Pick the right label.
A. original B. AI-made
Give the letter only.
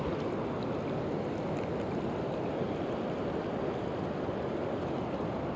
A